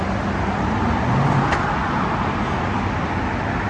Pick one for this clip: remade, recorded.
recorded